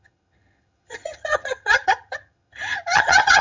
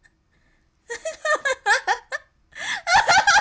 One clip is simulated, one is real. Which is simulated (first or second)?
first